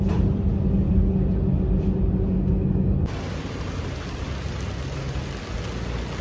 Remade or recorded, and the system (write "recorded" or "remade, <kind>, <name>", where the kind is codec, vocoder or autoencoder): recorded